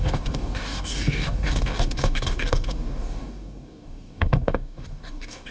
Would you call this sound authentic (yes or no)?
no